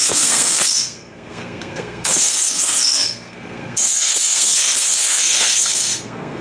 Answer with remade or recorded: remade